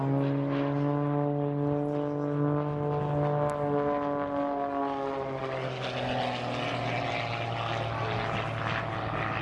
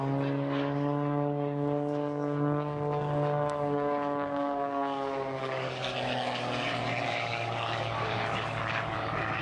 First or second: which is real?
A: first